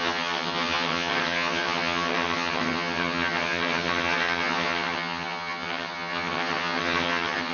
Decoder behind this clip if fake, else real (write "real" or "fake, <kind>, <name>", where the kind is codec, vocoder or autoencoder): fake, vocoder, HiFi-GAN